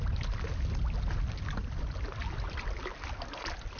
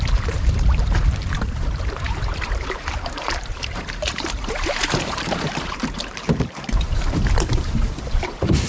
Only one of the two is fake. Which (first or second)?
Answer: second